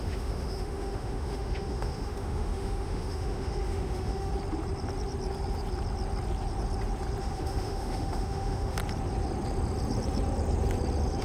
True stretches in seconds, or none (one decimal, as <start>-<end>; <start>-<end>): 4.3-7.2; 8.8-11.2

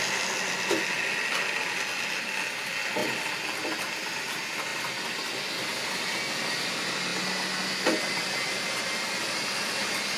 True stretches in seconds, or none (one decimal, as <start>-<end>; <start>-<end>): 0.0-10.2

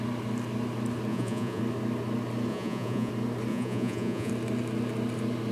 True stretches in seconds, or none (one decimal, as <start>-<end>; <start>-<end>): 0.0-1.1; 1.6-2.5; 3.1-3.5; 4.3-5.5

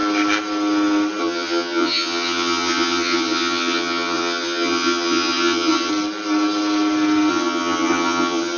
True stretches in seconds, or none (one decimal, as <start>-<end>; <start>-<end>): 0.0-1.2; 5.9-7.3